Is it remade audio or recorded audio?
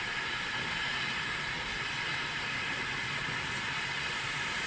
remade